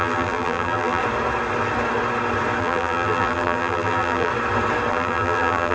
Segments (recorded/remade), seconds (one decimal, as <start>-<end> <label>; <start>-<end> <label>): 0.0-1.0 remade; 1.0-2.6 recorded; 2.6-4.3 remade; 4.3-4.9 recorded; 4.9-5.7 remade